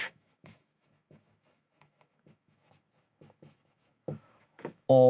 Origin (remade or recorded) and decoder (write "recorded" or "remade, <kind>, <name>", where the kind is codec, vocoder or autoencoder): remade, autoencoder, DAC-VAE